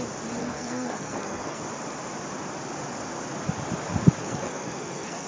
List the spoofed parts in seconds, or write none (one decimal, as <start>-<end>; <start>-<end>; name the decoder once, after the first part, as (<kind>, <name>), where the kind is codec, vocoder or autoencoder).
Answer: 0.4-1.6 (codec, SNAC); 4.2-5.3